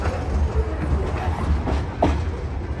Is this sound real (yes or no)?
yes